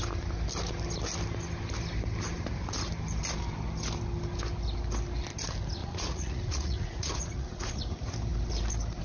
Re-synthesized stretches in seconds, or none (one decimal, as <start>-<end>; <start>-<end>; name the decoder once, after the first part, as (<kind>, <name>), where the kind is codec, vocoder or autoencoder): 5.8-7.8 (vocoder, Vocos)